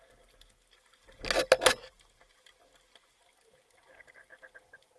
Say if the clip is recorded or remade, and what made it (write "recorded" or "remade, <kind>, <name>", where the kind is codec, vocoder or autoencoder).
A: recorded